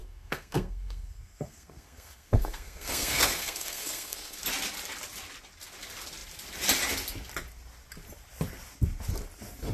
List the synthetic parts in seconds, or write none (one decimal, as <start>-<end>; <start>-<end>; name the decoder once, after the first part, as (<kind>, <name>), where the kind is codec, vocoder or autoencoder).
0.0-4.4 (codec, SNAC)

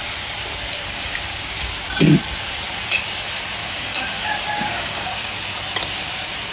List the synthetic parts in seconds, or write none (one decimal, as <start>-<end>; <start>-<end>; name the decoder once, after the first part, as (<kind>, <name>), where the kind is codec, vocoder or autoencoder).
0.7-1.7 (codec, DAC); 3.6-5.3